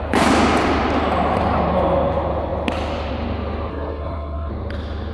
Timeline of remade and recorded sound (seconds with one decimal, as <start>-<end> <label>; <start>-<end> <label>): 0.0-3.7 recorded; 3.7-4.5 remade; 4.5-5.1 recorded